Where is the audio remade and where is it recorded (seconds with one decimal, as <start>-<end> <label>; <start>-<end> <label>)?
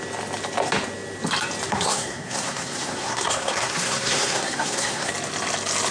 0.0-1.7 recorded; 1.7-5.1 remade; 5.1-5.9 recorded